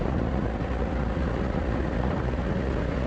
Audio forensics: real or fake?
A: fake